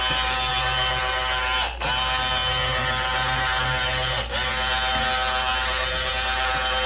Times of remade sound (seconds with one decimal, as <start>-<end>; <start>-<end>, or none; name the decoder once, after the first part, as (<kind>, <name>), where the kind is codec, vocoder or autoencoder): none